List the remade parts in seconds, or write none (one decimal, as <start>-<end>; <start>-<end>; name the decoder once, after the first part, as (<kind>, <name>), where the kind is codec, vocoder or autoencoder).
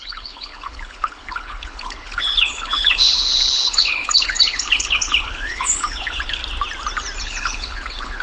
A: 0.0-6.4 (codec, HILCodec); 7.2-8.2